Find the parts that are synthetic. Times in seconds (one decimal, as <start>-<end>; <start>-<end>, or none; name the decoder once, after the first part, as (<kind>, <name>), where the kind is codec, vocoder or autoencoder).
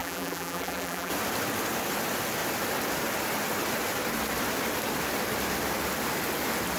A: 0.0-1.1 (vocoder, BigVGAN v2)